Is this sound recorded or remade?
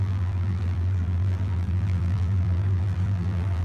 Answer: remade